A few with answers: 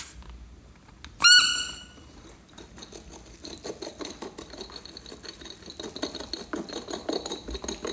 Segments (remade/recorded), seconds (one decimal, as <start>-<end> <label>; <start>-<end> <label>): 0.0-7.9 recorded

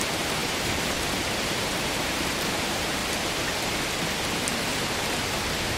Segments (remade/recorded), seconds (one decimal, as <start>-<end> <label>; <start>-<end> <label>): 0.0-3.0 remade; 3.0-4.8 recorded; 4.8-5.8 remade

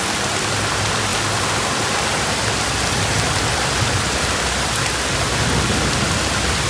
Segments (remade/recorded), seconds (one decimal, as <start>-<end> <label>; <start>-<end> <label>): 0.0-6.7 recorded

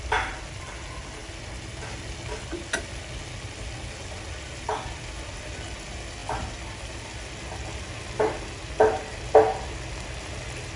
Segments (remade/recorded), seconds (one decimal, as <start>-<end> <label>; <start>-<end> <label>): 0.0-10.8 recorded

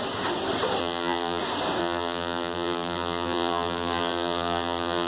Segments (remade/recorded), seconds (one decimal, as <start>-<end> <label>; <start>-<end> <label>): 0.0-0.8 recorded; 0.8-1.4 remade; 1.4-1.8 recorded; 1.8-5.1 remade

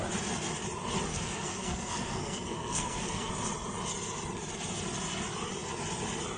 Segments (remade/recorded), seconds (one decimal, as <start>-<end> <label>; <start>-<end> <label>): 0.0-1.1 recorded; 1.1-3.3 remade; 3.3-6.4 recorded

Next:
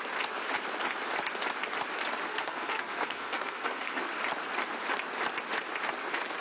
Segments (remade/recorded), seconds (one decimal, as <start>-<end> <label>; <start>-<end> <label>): 0.0-2.3 recorded; 2.3-4.0 remade; 4.0-6.4 recorded

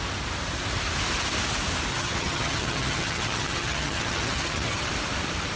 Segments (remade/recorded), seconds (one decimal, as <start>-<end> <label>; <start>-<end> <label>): 0.0-1.9 recorded; 1.9-4.9 remade; 4.9-5.6 recorded